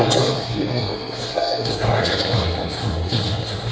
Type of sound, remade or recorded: remade